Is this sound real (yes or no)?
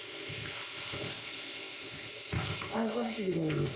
no